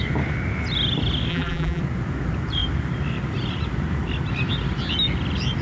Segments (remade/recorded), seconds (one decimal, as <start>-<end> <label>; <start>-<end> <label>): 0.0-1.3 recorded; 1.3-1.8 remade; 1.8-5.6 recorded